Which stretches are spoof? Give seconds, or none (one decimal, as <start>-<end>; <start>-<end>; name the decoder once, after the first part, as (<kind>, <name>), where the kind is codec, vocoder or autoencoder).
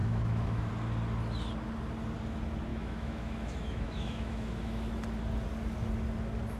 0.0-0.7 (autoencoder, DAC-VAE); 2.7-4.9